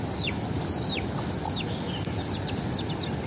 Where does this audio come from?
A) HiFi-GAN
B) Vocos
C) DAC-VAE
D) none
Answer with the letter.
D